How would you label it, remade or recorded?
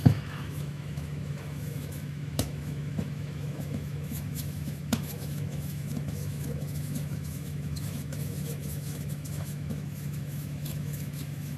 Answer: remade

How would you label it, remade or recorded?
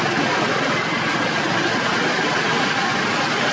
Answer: recorded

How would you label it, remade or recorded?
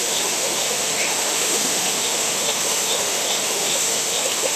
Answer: remade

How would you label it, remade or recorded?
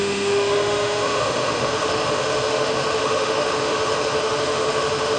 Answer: remade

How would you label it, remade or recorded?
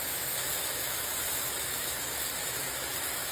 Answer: remade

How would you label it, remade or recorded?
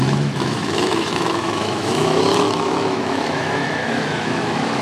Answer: remade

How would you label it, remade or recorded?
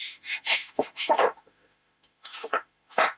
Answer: remade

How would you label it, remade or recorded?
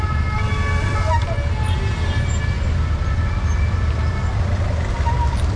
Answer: recorded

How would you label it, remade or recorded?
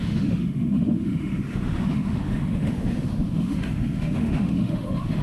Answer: remade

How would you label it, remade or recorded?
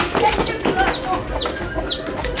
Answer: recorded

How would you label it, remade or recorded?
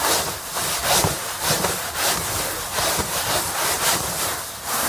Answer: recorded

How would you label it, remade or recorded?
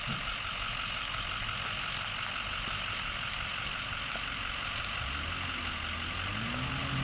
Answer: recorded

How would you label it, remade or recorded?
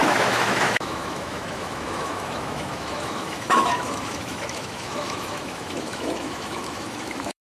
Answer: remade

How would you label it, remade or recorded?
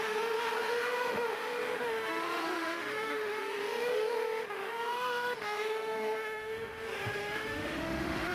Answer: remade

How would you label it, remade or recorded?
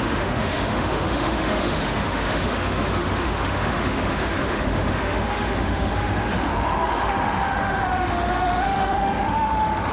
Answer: remade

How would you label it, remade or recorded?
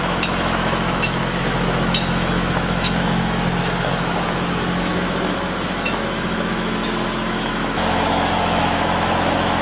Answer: remade